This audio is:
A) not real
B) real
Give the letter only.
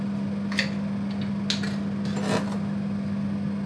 B